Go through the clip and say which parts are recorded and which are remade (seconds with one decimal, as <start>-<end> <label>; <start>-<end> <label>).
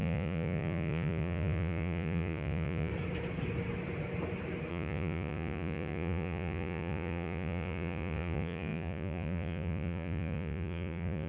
0.0-2.9 remade; 2.9-4.7 recorded; 4.7-11.3 remade